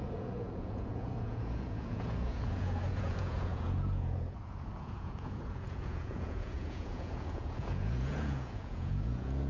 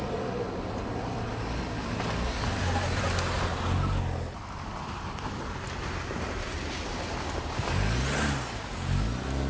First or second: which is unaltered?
second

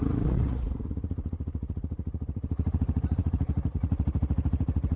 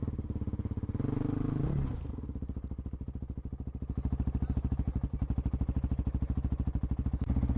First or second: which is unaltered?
second